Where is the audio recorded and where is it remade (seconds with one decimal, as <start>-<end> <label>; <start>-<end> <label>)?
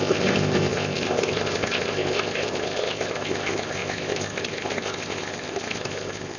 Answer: 0.0-6.4 remade